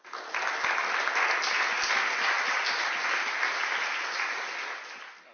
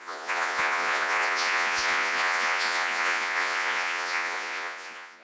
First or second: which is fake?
second